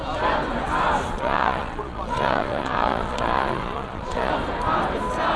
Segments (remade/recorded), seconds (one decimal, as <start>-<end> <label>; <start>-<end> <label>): 0.0-1.1 recorded; 1.1-4.3 remade; 4.3-5.4 recorded